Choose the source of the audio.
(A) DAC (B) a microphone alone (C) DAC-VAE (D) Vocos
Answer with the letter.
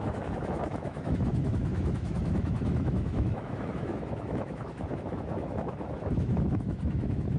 C